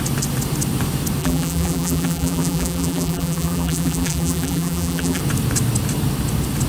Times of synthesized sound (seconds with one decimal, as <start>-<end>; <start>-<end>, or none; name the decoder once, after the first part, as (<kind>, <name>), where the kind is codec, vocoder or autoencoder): 1.2-5.2 (vocoder, BigVGAN v2)